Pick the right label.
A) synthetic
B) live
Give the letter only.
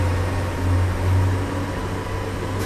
B